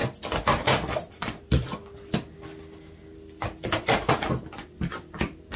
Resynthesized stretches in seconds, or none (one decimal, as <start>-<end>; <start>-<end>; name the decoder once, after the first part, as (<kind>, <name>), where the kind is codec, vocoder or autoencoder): none